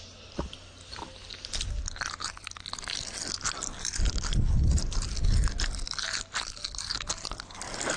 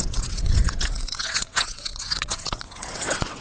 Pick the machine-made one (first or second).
second